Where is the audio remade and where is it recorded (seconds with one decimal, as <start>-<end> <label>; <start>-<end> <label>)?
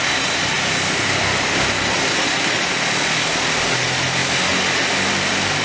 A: 0.0-5.6 recorded